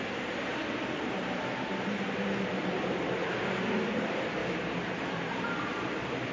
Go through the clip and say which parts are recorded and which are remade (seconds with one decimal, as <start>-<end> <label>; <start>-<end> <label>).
0.0-0.6 remade; 0.6-2.8 recorded; 2.8-4.4 remade; 4.4-4.9 recorded; 4.9-6.3 remade